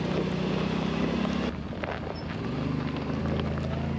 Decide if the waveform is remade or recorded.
recorded